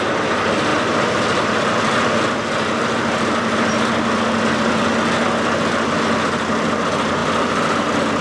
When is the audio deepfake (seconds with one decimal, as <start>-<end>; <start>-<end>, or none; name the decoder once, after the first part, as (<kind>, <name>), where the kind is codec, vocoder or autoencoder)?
none